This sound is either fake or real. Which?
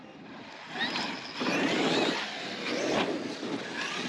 real